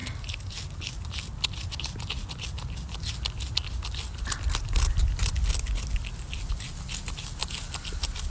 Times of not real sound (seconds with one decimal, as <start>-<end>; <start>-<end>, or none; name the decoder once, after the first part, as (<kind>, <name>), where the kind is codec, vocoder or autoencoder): none